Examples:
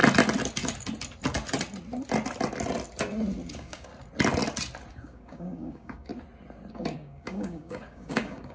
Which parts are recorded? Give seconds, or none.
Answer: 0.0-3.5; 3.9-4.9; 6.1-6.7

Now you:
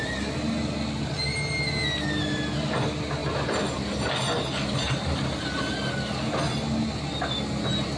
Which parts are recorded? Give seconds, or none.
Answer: 0.0-8.0

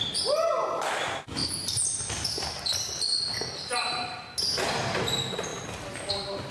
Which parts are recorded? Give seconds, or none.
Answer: 0.0-6.5

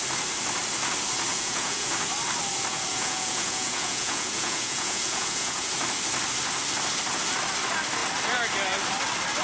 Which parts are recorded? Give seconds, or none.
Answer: 0.0-1.3; 1.9-2.9; 5.7-9.4

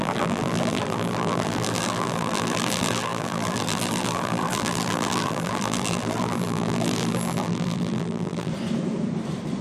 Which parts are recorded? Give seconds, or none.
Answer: 8.5-9.6

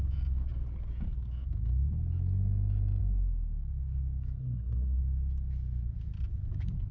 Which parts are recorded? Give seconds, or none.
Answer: 0.0-4.4; 5.0-6.9

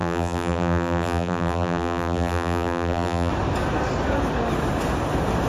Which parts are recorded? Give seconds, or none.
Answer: 3.3-5.5